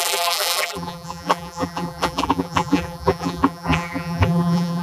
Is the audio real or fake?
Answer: fake